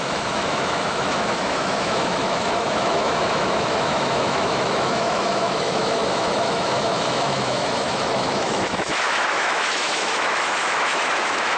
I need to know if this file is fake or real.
fake